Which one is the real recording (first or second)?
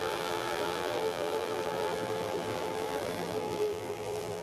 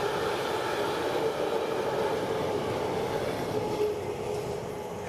second